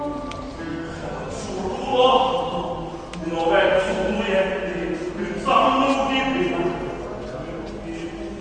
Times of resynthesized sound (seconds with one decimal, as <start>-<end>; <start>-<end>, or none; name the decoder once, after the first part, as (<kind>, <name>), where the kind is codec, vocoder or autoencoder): 0.7-1.3 (codec, SNAC); 3.7-4.2